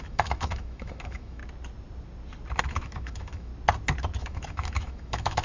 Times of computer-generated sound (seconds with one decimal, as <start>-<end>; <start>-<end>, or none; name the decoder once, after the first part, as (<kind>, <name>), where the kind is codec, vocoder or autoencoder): 0.0-1.4 (autoencoder, DAC-VAE); 2.6-3.5; 4.2-5.4